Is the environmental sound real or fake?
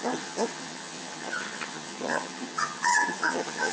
fake